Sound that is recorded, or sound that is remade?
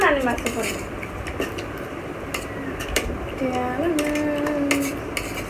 recorded